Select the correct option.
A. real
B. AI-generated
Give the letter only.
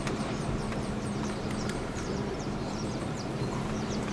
B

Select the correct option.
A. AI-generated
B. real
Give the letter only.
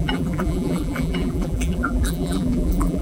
A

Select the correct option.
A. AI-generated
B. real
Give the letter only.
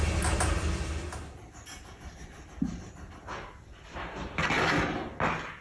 B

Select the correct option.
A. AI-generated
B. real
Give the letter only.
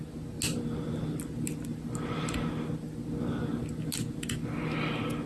B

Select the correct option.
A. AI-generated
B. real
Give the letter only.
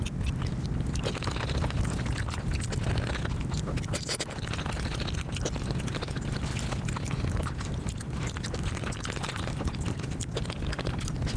B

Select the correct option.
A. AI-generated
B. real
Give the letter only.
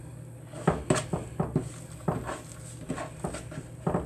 B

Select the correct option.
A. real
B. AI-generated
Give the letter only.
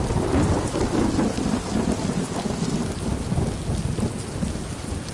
A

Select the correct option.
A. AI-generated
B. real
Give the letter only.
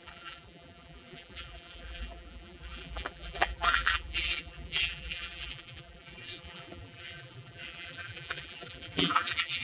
A